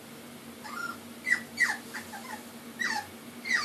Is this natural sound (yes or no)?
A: yes